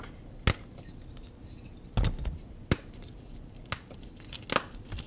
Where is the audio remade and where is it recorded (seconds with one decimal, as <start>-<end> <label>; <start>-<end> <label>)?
0.0-5.1 recorded